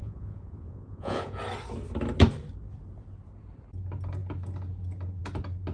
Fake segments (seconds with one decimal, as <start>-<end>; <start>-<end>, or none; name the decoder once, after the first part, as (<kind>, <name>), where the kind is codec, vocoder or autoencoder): 0.0-1.4 (vocoder, Vocos)